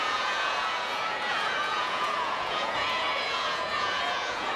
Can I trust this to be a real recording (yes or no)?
no